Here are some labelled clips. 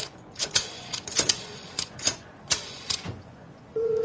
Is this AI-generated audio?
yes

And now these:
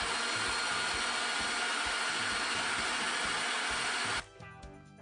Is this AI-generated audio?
no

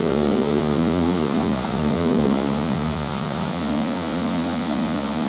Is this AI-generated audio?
yes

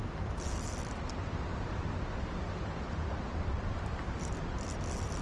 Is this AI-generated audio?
no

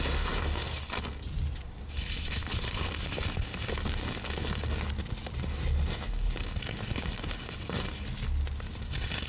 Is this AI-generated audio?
no